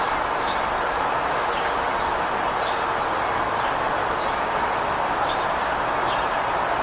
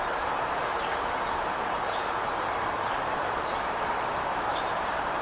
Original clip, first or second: first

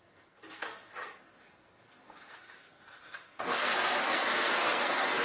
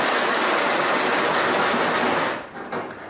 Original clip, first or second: second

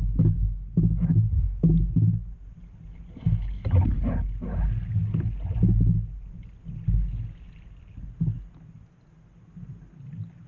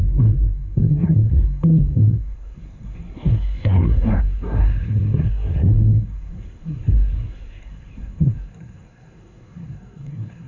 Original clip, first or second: first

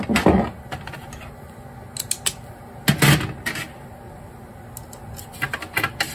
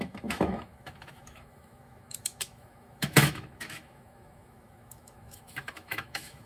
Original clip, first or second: first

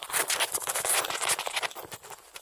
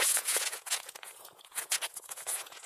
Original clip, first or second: first